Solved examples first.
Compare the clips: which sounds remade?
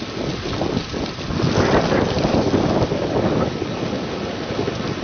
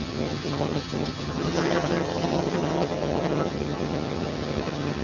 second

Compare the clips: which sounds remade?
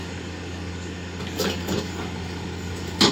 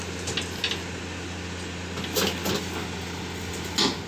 first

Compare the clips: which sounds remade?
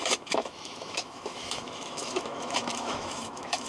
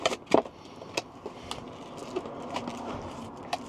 first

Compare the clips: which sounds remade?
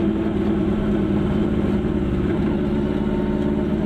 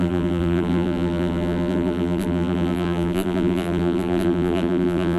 second